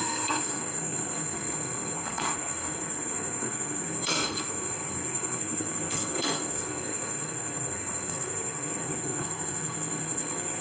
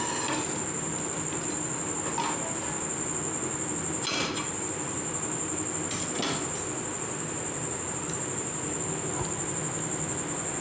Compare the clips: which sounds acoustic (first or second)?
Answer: second